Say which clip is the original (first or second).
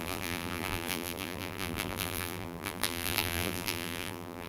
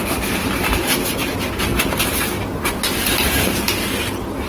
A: second